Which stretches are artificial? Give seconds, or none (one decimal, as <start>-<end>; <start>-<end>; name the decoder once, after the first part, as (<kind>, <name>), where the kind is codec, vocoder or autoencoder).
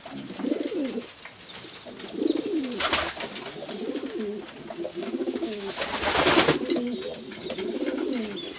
4.9-5.7 (codec, DAC)